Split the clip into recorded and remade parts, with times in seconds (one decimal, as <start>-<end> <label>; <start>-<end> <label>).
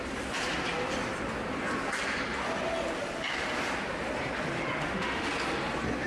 0.0-4.8 recorded; 4.8-5.3 remade; 5.3-6.1 recorded